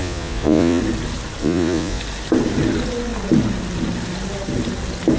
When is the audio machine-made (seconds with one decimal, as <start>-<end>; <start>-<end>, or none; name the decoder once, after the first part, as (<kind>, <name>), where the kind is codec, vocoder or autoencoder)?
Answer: 0.0-0.8 (vocoder, Vocos); 1.4-2.0